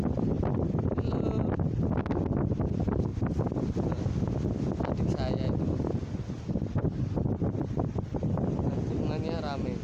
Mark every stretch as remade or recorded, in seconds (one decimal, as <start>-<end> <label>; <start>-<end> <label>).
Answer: 0.0-9.8 recorded